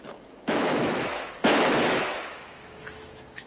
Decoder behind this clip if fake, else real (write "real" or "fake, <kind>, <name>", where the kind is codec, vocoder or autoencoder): fake, autoencoder, DAC-VAE